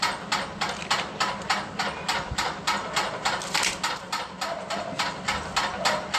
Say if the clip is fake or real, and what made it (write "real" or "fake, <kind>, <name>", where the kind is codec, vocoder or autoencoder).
real